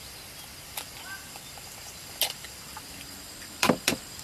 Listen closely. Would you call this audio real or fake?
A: fake